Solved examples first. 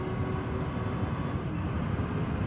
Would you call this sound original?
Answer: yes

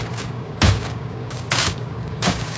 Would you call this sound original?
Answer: no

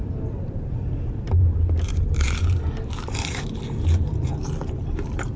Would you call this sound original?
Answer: no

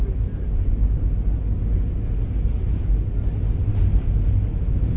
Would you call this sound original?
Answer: yes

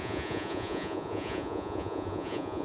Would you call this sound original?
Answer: no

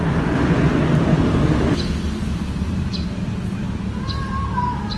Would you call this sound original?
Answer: yes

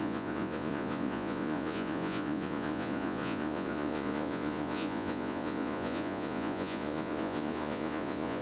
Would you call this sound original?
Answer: no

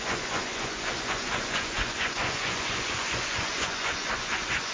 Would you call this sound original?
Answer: no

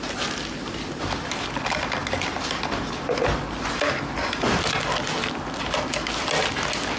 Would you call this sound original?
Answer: yes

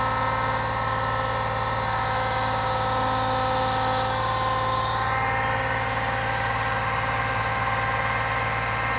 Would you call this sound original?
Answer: yes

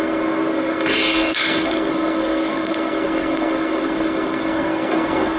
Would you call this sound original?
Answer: no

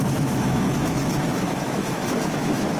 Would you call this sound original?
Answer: no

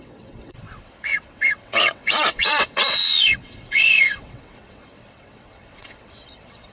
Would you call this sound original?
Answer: no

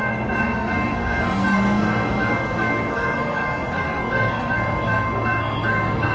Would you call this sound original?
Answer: no